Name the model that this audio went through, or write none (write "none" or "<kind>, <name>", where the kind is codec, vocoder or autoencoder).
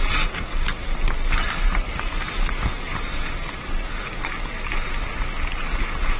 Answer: none